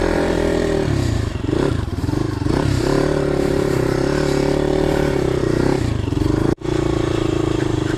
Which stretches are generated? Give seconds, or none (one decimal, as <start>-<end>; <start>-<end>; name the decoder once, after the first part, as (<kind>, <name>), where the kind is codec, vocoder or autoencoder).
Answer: 0.0-8.0 (vocoder, BigVGAN v2)